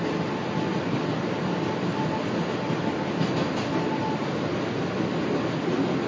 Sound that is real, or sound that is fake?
real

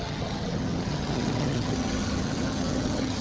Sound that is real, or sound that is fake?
fake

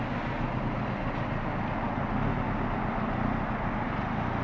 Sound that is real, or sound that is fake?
real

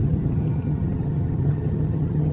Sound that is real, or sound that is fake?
fake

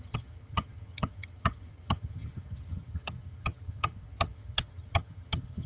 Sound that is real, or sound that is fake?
fake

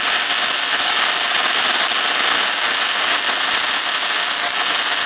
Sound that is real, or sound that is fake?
real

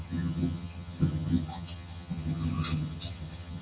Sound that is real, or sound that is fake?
fake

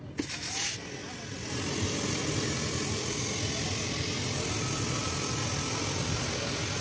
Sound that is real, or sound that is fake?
real